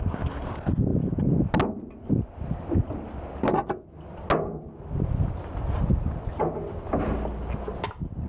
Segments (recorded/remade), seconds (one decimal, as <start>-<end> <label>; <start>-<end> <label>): 0.0-8.3 recorded